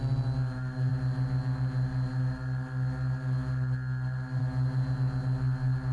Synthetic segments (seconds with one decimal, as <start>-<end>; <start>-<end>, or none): none

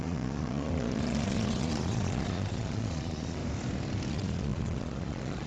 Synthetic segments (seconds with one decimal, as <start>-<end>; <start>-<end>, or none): 0.0-3.4; 4.1-5.5

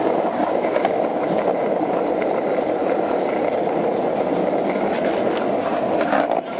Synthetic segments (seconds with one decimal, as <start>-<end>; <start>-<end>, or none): none

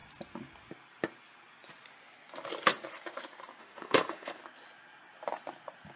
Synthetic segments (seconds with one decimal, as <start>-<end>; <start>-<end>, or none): 3.6-4.4

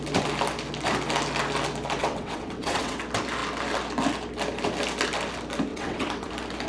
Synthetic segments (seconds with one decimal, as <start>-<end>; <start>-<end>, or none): 2.0-3.0; 5.7-6.3

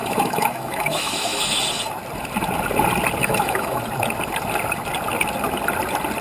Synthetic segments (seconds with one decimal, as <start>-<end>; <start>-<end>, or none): 0.0-1.6; 3.2-3.8